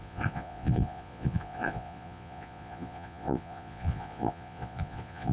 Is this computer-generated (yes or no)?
yes